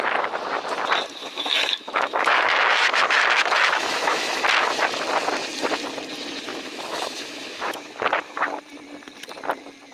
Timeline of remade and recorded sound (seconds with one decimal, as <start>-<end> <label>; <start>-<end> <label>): 0.0-1.2 recorded; 1.2-4.4 remade; 4.4-6.5 recorded; 6.5-8.6 remade; 8.6-9.9 recorded